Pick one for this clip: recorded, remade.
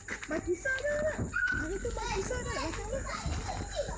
recorded